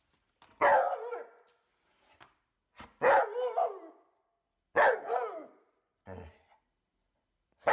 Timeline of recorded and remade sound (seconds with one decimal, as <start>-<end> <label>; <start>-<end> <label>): 0.0-7.7 recorded